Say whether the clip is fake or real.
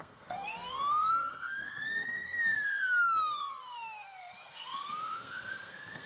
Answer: fake